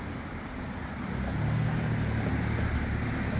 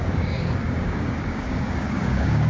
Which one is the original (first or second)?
first